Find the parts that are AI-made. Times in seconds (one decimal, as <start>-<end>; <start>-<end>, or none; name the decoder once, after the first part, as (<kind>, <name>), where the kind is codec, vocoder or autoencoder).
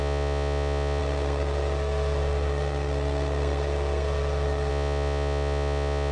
1.0-4.7 (codec, SNAC)